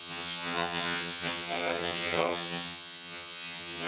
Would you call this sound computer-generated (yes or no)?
yes